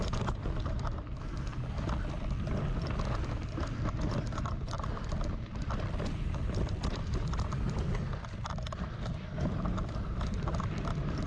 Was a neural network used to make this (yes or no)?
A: yes